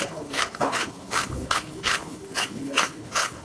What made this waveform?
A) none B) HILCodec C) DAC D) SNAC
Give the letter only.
B